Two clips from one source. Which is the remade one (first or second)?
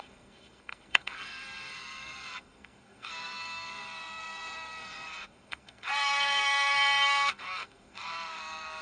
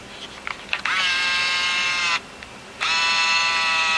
first